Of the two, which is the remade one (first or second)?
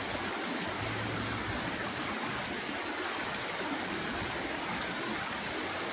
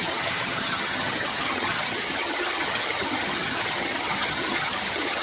second